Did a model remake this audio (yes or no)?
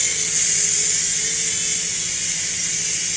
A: no